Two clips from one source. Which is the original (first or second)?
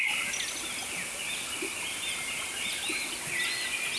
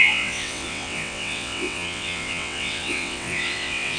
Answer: first